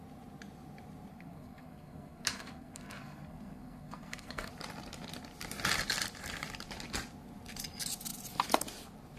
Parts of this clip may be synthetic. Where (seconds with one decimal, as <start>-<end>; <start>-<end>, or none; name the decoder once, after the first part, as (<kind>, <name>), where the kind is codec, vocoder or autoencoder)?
1.1-4.5 (codec, SNAC)